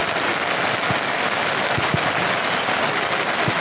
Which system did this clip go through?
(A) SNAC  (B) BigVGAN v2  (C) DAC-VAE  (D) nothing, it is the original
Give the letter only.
D